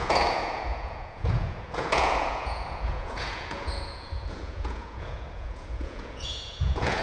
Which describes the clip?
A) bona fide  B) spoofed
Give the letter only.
B